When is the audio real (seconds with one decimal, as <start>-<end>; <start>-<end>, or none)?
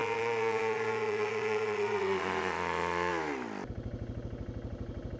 3.1-5.2